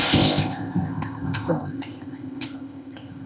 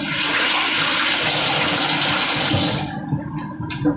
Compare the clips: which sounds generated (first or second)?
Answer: first